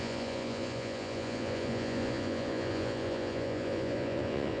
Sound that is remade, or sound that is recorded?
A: remade